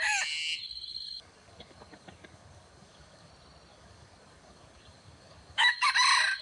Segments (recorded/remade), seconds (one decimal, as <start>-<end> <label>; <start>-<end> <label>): 0.0-0.9 recorded; 0.9-3.3 remade; 3.3-3.7 recorded; 3.7-5.9 remade; 5.9-6.4 recorded